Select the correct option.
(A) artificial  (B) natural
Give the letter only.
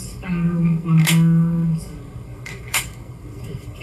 A